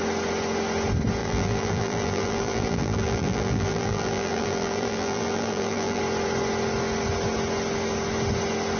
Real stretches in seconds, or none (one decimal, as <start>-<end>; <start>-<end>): 0.0-1.2; 6.0-8.8